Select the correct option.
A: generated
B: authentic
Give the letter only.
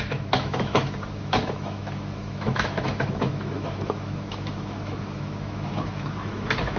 A